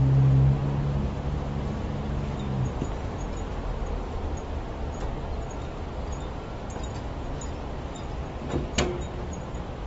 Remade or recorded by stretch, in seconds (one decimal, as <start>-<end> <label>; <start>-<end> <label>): 0.0-9.9 recorded